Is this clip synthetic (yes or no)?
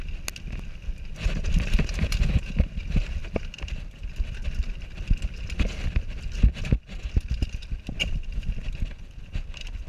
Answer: no